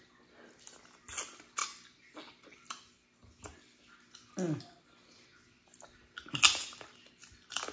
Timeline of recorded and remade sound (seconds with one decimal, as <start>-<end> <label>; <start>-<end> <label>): 0.0-7.7 recorded